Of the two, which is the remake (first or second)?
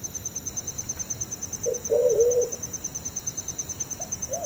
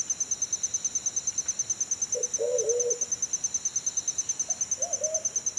first